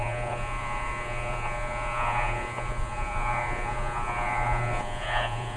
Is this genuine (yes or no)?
no